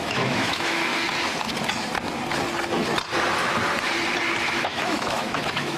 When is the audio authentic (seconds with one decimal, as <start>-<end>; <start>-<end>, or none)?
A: 0.9-4.4